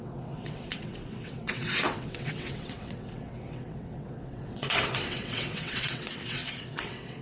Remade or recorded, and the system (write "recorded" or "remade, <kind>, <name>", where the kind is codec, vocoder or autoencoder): remade, vocoder, WaveNeXt